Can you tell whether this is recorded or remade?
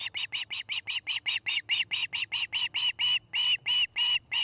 recorded